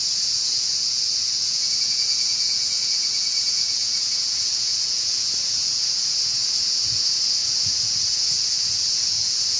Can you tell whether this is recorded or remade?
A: remade